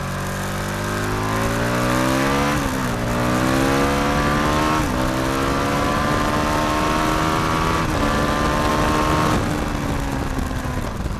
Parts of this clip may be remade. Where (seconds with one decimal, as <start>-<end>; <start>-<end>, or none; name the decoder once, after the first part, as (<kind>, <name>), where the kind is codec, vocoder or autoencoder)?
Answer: none